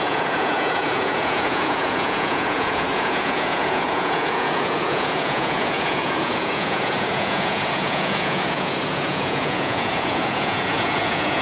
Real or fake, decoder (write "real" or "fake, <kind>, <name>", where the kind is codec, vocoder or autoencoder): fake, vocoder, Vocos